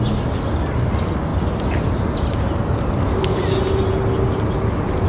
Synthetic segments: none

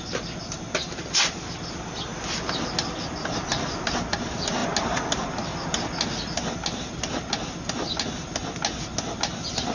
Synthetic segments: none